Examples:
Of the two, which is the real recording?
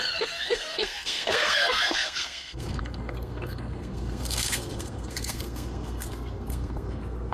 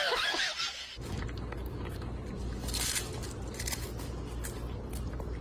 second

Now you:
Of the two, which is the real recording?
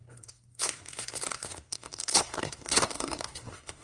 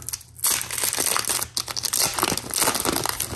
second